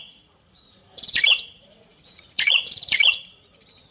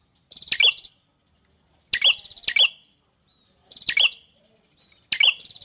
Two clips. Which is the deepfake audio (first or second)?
first